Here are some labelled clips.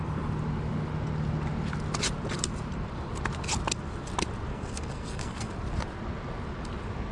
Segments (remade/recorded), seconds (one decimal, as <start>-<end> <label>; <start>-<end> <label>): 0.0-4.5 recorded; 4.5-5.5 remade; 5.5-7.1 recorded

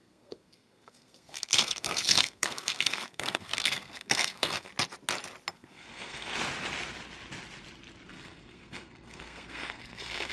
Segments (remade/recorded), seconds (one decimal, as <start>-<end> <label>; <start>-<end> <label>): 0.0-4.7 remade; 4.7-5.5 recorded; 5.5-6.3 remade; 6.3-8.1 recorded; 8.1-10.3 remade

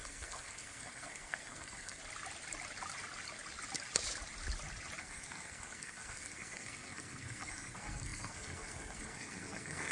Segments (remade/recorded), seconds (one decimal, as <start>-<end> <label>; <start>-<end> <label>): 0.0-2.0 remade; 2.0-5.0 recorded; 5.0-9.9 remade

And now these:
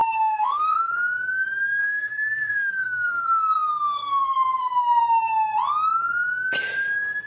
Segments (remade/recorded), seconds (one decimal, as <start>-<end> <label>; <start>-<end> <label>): 0.0-0.9 remade; 0.9-1.8 recorded; 1.8-5.0 remade; 5.0-7.3 recorded